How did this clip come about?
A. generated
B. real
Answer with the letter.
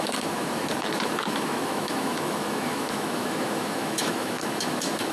A